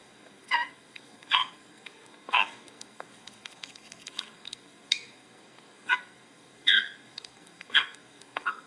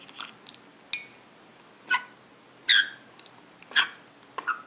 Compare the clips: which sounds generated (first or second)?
first